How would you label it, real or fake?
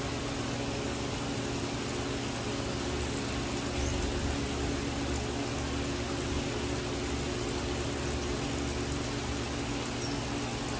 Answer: real